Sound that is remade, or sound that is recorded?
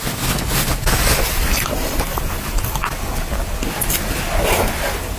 recorded